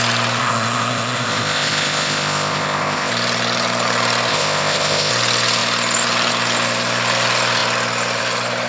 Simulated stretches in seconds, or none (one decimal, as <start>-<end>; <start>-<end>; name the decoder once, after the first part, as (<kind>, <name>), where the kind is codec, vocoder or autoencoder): 0.4-3.1 (codec, ZipCodec); 4.3-5.1